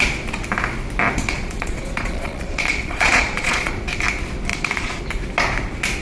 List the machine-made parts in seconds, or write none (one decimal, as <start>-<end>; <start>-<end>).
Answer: 1.2-3.7; 4.5-5.0